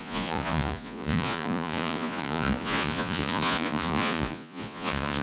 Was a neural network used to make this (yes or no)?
yes